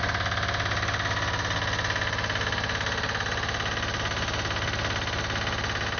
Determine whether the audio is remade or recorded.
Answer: recorded